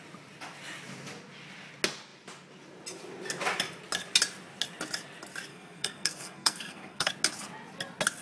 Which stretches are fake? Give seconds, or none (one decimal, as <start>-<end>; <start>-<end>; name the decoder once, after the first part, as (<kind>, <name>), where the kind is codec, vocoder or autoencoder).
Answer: 5.5-7.1 (codec, SNAC)